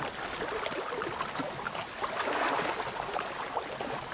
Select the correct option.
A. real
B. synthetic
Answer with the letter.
A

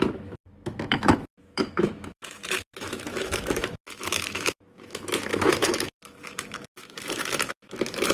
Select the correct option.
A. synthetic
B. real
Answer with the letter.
A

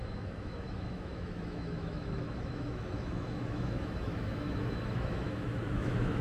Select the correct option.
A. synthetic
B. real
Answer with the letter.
A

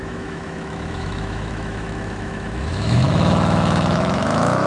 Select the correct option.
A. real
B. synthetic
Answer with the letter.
B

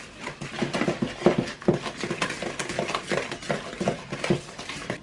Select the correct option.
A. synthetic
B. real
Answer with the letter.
B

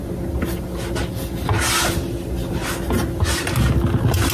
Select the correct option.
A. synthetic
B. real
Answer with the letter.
B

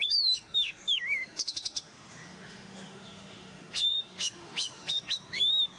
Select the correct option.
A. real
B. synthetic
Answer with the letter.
B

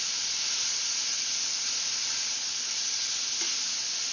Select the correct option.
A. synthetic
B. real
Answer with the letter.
B